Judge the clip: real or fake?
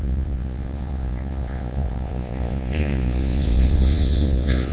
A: fake